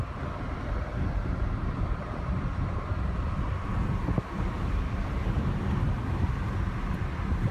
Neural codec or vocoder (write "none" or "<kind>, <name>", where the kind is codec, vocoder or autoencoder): vocoder, BigVGAN v2